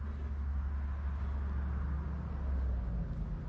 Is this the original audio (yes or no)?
yes